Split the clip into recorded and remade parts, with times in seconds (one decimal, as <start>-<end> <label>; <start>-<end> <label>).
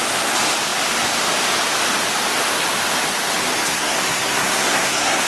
0.0-3.7 recorded; 3.7-5.3 remade